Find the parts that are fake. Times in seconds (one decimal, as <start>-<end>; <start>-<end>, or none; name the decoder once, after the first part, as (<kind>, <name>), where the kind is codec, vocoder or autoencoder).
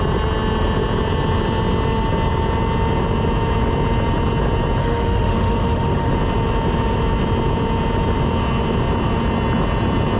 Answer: 4.8-6.1 (autoencoder, DAC-VAE)